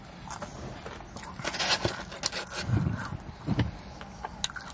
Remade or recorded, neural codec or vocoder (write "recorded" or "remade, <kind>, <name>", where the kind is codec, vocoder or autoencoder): recorded